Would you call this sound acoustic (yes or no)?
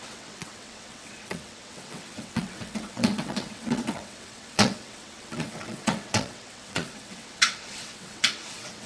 no